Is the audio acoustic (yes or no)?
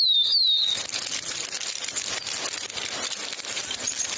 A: yes